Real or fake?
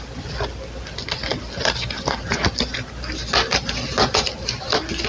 real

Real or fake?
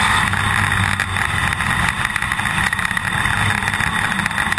real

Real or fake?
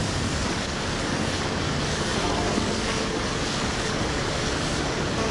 fake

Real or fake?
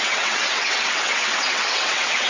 fake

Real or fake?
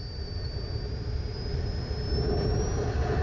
real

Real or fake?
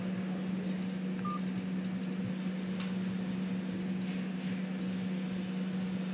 real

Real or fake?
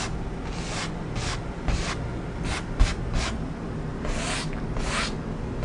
real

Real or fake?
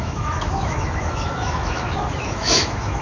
fake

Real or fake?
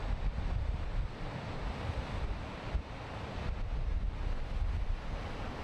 real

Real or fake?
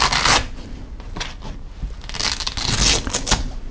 real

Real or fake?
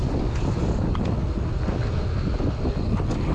real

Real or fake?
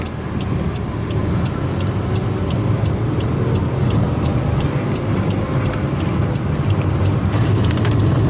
real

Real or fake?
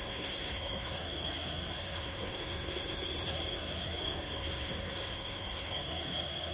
fake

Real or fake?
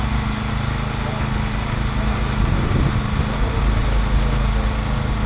real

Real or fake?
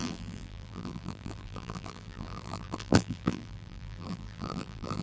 fake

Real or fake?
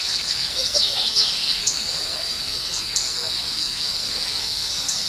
fake